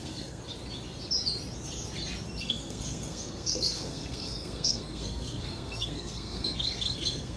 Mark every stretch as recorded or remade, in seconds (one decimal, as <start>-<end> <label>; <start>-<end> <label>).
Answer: 0.0-0.4 remade; 0.4-2.4 recorded; 2.4-7.4 remade